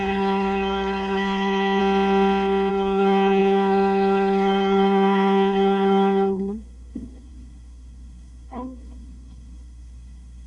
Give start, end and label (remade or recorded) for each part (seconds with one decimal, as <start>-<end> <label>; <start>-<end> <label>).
0.0-1.8 remade; 1.8-2.7 recorded; 2.7-10.5 remade